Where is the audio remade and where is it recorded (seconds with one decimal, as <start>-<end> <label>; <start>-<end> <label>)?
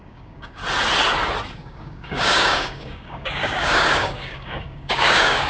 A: 0.0-0.6 remade; 0.6-1.5 recorded; 1.5-5.5 remade